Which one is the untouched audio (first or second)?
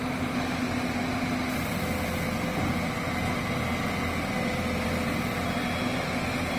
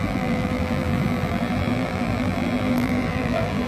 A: first